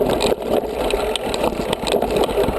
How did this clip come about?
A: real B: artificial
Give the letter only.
A